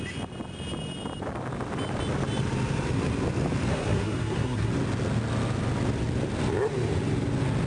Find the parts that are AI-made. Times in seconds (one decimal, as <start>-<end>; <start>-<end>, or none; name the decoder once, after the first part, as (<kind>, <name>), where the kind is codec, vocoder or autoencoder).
3.7-4.7 (codec, SNAC)